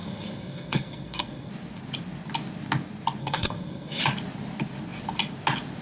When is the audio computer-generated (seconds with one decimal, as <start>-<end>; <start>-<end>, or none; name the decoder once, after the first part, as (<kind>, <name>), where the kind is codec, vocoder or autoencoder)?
0.0-1.5 (codec, SNAC); 3.2-4.0